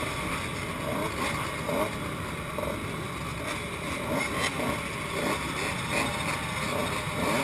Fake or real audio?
real